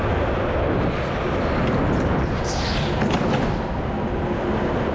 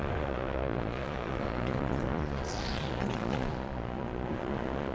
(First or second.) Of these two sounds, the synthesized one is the second